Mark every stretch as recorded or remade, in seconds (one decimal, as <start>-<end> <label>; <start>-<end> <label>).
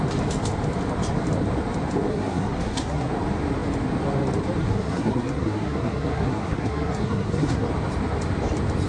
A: 0.0-2.1 recorded; 2.1-3.1 remade; 3.1-4.6 recorded; 4.6-7.7 remade; 7.7-8.9 recorded